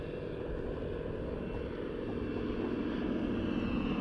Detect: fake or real real